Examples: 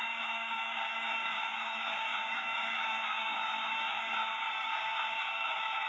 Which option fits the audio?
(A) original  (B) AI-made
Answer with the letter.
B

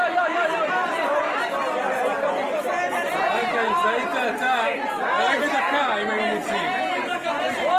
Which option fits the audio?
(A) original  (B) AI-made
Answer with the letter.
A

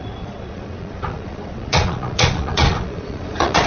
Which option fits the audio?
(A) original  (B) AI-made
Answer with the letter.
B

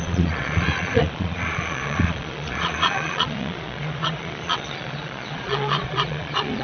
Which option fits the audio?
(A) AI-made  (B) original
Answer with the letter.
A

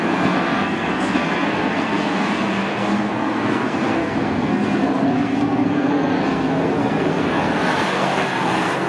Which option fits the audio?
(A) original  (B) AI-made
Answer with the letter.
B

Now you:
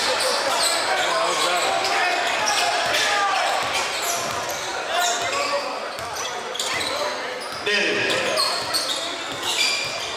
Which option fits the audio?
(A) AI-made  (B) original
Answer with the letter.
B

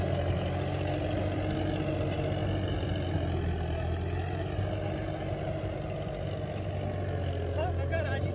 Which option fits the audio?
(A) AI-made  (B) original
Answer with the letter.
B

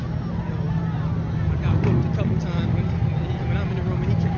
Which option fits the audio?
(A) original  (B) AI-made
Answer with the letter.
A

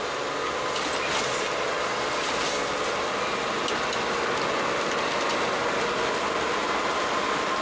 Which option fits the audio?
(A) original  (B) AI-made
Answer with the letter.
A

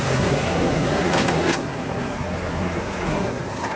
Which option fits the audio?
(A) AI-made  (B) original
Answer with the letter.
A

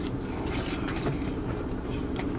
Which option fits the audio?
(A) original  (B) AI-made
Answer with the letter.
B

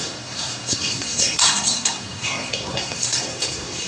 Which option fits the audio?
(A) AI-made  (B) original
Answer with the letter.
A